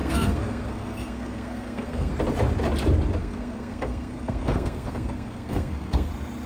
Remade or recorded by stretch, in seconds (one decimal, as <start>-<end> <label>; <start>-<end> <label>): 0.0-2.1 remade; 2.1-3.2 recorded; 3.2-6.1 remade; 6.1-6.5 recorded